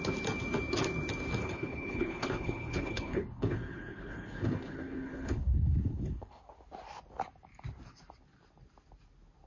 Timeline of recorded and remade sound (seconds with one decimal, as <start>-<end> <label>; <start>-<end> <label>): 0.0-1.4 recorded; 1.4-6.4 remade; 6.4-9.5 recorded